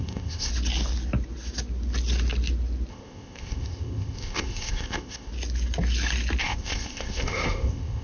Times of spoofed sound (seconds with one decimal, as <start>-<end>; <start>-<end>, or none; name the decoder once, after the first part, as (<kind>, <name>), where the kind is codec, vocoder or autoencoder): 0.0-0.5 (codec, ZipCodec); 2.9-5.3; 6.4-8.0